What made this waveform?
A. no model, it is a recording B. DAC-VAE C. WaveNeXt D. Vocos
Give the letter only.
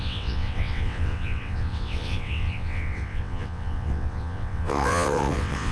C